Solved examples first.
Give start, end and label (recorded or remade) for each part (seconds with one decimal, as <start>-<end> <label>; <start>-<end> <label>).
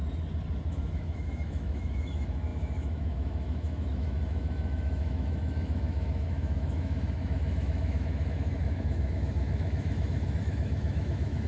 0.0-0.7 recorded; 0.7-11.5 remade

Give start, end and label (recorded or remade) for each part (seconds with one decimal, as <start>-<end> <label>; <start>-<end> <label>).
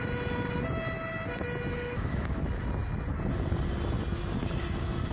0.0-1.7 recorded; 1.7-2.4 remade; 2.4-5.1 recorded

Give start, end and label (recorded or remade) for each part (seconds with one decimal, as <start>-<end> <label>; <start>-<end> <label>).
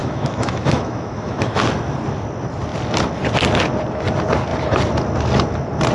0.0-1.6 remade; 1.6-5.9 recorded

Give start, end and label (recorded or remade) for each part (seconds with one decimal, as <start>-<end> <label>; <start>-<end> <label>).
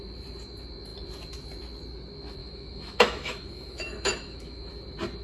0.0-2.4 recorded; 2.4-4.7 remade; 4.7-5.2 recorded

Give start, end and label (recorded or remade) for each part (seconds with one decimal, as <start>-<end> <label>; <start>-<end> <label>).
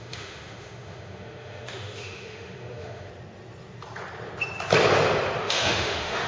0.0-3.1 remade; 3.1-5.4 recorded; 5.4-6.3 remade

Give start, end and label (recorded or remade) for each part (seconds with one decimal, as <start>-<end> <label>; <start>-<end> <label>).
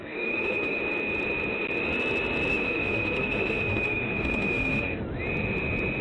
0.0-0.8 remade; 0.8-2.5 recorded; 2.5-5.0 remade; 5.0-6.0 recorded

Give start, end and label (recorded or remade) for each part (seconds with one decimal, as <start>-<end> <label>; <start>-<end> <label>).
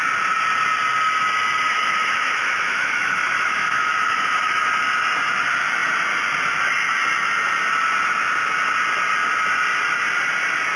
0.0-1.7 recorded; 1.7-4.7 remade; 4.7-10.8 recorded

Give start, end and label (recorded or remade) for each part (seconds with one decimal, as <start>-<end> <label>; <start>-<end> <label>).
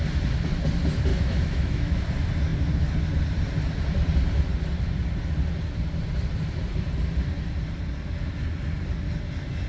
0.0-1.1 recorded; 1.1-2.0 remade; 2.0-9.7 recorded